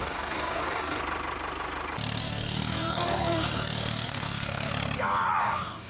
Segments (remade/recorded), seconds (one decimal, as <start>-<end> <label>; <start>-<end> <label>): 0.0-1.0 remade; 1.0-2.2 recorded; 2.2-4.7 remade; 4.7-5.4 recorded; 5.4-5.9 remade

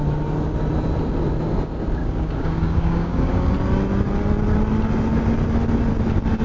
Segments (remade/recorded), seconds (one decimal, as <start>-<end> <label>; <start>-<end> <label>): 0.0-2.0 recorded; 2.0-3.5 remade; 3.5-6.4 recorded

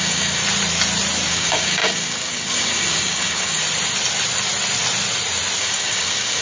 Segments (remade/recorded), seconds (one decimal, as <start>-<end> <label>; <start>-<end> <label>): 0.0-0.4 remade; 0.4-1.3 recorded; 1.3-3.6 remade; 3.6-5.6 recorded; 5.6-6.4 remade

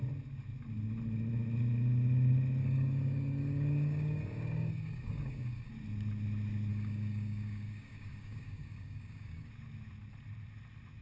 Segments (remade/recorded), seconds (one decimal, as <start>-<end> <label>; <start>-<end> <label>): 0.0-2.6 recorded; 2.6-5.7 remade; 5.7-6.7 recorded; 6.7-9.5 remade; 9.5-11.0 recorded

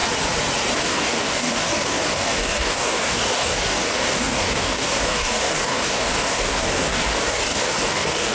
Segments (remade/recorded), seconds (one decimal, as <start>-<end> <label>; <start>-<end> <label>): 0.0-0.8 recorded; 0.8-8.3 remade

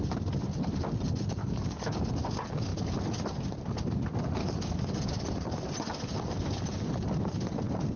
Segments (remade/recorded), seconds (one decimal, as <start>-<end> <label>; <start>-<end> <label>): 0.0-1.4 recorded; 1.4-2.1 remade; 2.1-4.4 recorded; 4.4-5.2 remade; 5.2-8.0 recorded

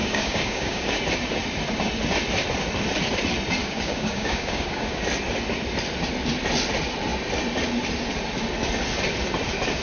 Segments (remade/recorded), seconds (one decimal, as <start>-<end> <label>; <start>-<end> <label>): 0.0-1.0 remade; 1.0-3.6 recorded; 3.6-5.0 remade; 5.0-9.8 recorded

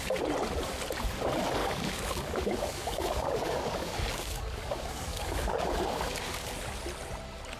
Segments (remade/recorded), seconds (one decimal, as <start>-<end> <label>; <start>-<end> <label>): 0.0-1.6 recorded; 1.6-6.2 remade; 6.2-7.6 recorded